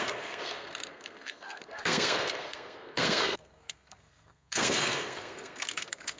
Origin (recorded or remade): remade